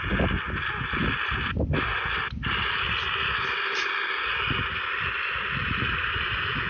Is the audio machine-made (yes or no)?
no